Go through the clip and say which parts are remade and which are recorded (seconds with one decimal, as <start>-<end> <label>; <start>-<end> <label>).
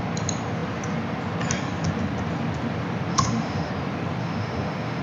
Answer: 0.0-3.1 recorded; 3.1-3.7 remade; 3.7-4.2 recorded; 4.2-5.0 remade